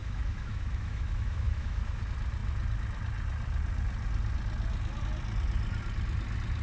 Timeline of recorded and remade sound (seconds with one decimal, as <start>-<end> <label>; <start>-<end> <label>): 0.0-2.0 remade; 2.0-6.6 recorded